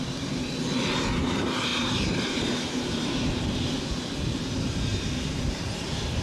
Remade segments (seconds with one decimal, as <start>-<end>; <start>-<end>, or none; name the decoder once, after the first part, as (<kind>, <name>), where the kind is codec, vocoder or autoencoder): 1.7-3.4 (vocoder, BigVGAN v2); 4.9-6.2